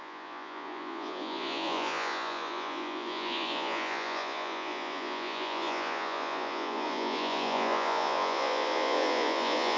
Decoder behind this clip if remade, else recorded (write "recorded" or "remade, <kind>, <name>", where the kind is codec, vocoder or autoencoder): remade, vocoder, Vocos